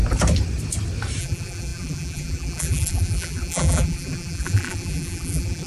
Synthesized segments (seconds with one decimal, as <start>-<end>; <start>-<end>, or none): 1.2-5.7